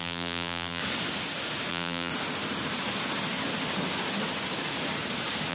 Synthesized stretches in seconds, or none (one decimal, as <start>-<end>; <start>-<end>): 0.0-0.8; 1.7-2.1